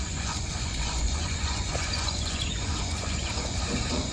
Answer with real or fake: fake